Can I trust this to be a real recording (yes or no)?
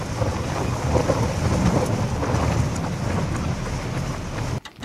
yes